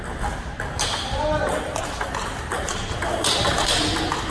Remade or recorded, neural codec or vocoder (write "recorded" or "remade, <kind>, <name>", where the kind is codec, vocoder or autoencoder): recorded